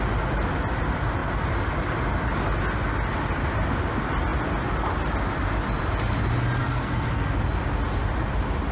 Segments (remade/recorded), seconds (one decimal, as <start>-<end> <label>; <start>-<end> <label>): 0.0-6.6 recorded; 6.6-7.3 remade; 7.3-8.7 recorded